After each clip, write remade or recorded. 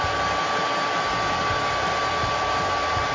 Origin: recorded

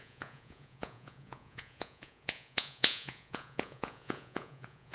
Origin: remade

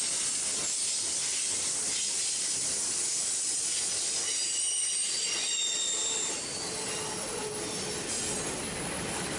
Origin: recorded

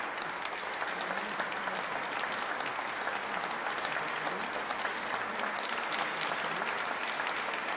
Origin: recorded